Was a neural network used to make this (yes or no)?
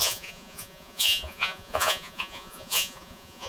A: yes